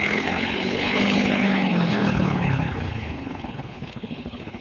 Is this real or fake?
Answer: fake